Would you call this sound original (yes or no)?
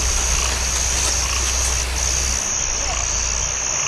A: yes